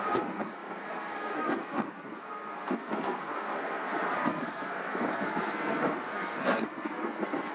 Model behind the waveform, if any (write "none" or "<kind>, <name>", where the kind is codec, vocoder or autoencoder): codec, SNAC